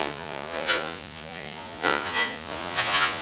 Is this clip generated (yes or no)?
yes